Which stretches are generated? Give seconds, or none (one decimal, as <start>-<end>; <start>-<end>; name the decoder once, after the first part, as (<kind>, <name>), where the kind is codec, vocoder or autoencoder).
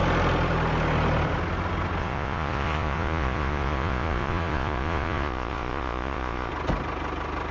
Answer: 2.0-6.5 (vocoder, Vocos)